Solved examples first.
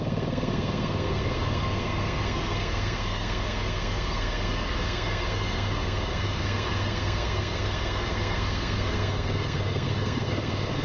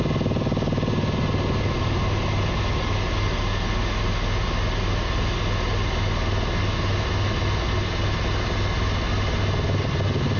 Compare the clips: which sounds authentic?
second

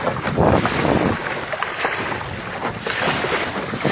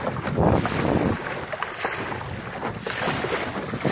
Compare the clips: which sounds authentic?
second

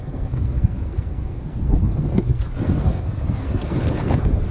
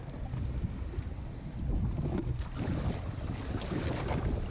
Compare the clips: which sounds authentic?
second